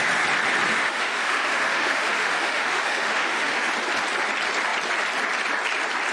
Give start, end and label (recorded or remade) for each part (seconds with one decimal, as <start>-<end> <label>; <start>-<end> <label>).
0.0-0.7 recorded; 0.7-3.7 remade; 3.7-6.1 recorded